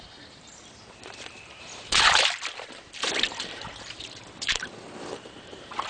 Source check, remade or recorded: remade